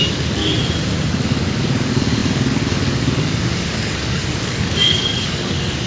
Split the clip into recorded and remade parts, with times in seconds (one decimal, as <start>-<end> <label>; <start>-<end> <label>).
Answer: 0.0-0.4 remade; 0.4-1.1 recorded; 1.1-5.9 remade